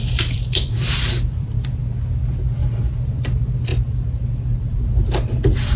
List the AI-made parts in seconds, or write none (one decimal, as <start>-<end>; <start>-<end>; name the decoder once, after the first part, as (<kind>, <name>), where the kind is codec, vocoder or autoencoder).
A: 0.0-1.7 (vocoder, BigVGAN v2); 2.6-3.1